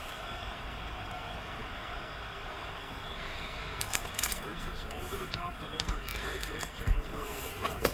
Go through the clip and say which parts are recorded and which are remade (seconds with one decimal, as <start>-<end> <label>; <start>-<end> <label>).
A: 0.0-7.9 remade